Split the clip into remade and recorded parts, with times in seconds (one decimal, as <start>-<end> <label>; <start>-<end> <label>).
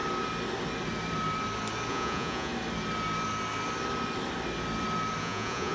0.0-1.9 recorded; 1.9-2.5 remade; 2.5-5.2 recorded; 5.2-5.7 remade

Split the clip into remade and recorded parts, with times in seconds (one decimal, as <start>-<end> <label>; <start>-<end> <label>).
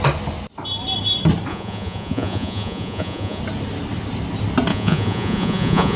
0.0-1.5 recorded; 1.5-3.4 remade; 3.4-4.7 recorded; 4.7-6.0 remade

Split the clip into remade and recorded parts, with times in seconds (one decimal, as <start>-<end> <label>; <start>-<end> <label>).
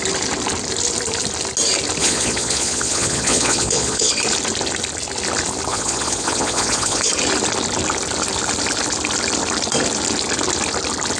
0.0-2.0 recorded; 2.0-4.1 remade; 4.1-5.7 recorded; 5.7-7.1 remade; 7.1-11.2 recorded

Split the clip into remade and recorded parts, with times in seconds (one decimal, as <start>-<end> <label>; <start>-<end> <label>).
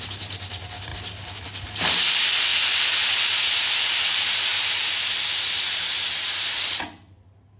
0.0-7.6 recorded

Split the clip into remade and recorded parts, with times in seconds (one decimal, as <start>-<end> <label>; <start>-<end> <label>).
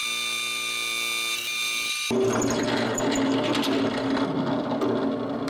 0.0-5.5 recorded